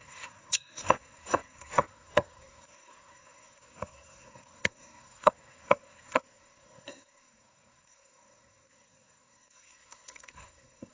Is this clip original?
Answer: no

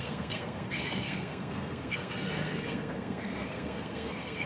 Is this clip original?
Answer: no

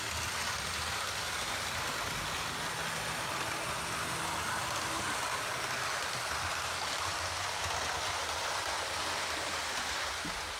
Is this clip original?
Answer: yes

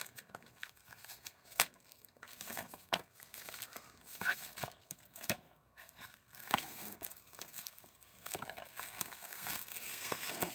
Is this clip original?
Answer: no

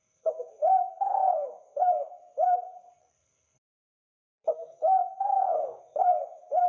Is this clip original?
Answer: no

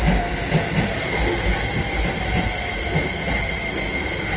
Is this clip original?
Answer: yes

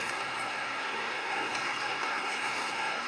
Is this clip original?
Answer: no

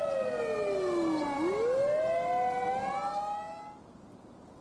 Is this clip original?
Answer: yes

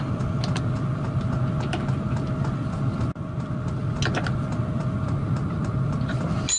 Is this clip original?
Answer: yes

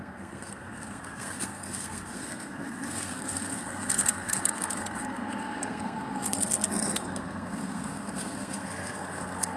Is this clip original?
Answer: no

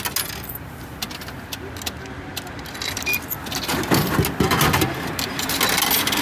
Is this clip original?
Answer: yes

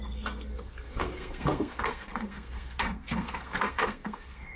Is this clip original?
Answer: no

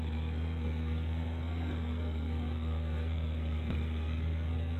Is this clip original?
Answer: no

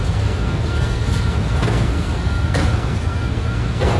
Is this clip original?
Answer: no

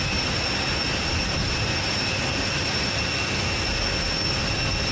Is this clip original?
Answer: yes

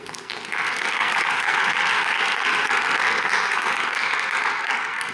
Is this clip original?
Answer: no